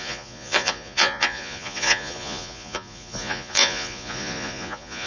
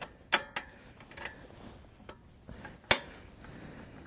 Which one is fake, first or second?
first